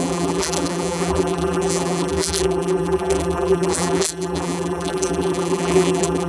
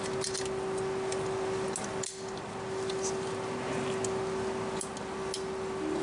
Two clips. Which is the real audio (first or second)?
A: second